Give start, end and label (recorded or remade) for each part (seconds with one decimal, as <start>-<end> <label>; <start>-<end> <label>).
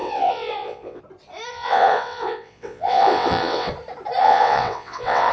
0.0-1.0 remade; 1.0-1.5 recorded; 1.5-3.7 remade; 3.7-4.2 recorded; 4.2-5.3 remade